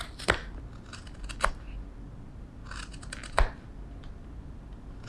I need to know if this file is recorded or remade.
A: recorded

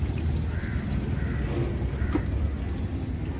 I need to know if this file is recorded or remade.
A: recorded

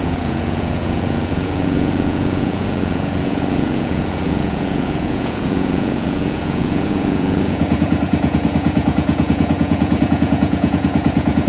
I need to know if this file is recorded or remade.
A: remade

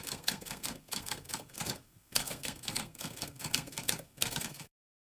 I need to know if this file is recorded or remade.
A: remade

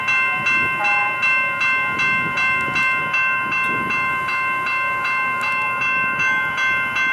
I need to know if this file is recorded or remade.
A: recorded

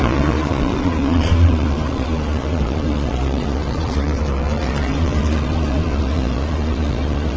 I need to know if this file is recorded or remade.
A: remade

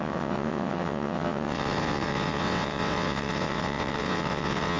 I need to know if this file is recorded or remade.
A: remade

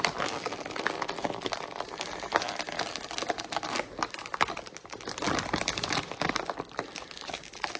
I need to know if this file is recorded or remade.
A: recorded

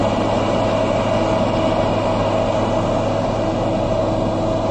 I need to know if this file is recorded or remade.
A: recorded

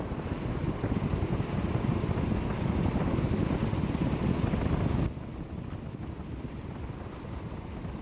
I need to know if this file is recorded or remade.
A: recorded